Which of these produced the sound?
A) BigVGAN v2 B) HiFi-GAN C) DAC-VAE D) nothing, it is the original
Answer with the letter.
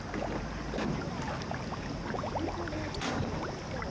D